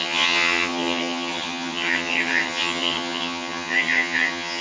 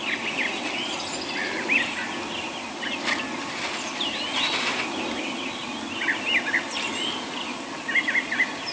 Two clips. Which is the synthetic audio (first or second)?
first